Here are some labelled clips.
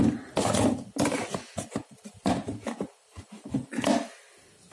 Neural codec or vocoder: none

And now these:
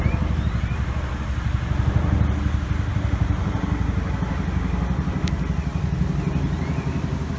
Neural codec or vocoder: none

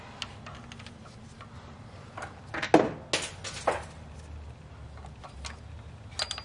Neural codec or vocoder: none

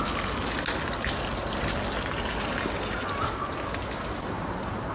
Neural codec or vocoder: none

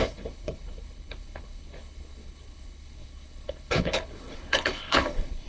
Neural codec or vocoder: codec, HILCodec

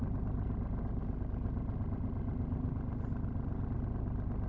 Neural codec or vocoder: none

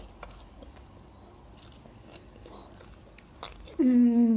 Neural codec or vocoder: none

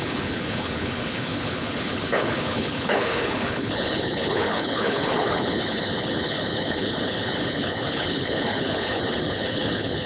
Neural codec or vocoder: codec, HILCodec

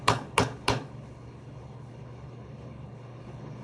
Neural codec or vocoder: codec, HILCodec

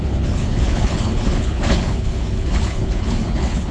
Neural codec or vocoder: codec, HILCodec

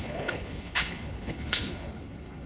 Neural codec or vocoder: codec, HILCodec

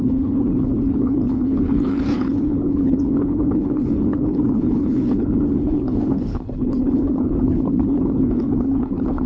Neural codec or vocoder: codec, HILCodec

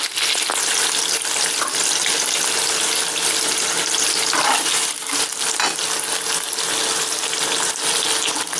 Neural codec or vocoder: none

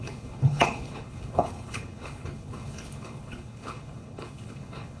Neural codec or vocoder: codec, HILCodec